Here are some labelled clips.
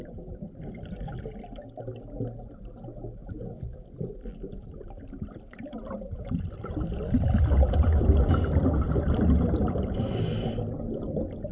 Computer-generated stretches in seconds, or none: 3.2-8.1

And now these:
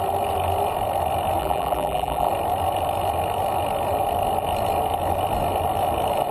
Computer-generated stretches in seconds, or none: 1.4-2.3

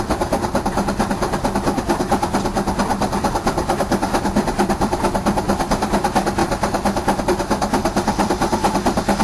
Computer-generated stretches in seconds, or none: 2.9-5.9; 6.4-7.2; 7.8-8.7

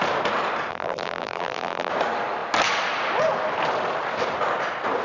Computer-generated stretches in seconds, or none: 0.7-1.9

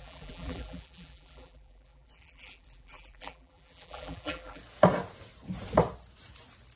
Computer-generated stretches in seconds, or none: 0.0-4.6

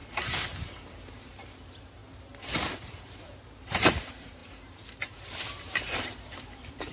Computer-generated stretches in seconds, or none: 0.6-2.0; 2.9-6.9

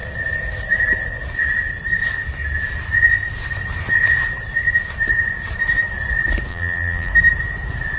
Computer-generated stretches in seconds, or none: 6.5-7.1